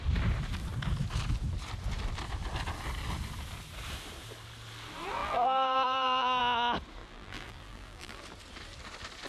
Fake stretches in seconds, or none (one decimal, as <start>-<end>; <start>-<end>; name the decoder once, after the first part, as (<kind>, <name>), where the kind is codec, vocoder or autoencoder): 5.2-6.4 (vocoder, BigVGAN v2); 7.0-8.2